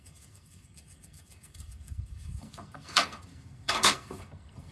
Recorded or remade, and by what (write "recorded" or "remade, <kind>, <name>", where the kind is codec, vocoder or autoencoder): remade, codec, SNAC